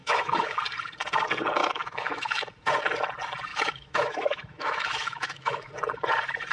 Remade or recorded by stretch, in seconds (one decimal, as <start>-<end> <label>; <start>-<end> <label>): 0.0-0.6 remade; 0.6-1.6 recorded; 1.6-2.4 remade; 2.4-3.5 recorded; 3.5-5.7 remade; 5.7-6.5 recorded